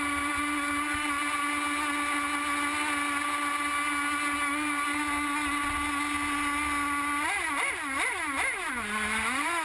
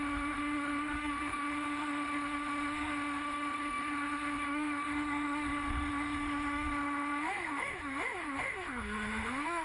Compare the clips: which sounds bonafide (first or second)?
first